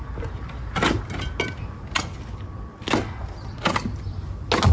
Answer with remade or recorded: recorded